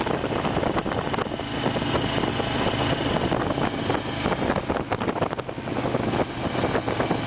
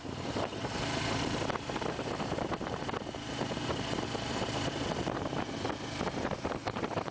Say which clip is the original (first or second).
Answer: first